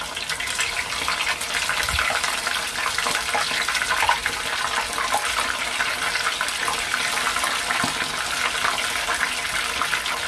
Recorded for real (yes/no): yes